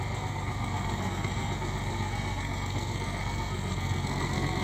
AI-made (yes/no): yes